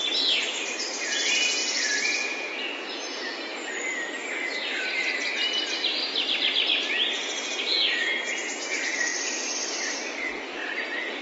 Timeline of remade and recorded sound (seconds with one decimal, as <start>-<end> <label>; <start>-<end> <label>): 0.0-1.6 recorded; 1.6-3.7 remade; 3.7-11.2 recorded